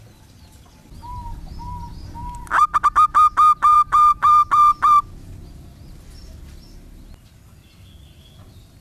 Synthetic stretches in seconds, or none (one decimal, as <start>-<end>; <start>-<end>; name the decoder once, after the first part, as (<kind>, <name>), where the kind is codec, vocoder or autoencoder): 3.7-4.5 (vocoder, BigVGAN v2)